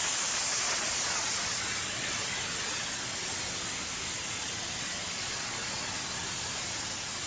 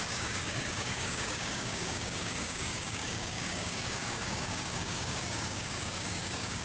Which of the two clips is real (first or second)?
first